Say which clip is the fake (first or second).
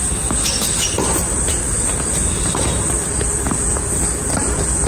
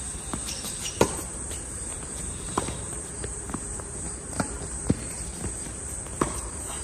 second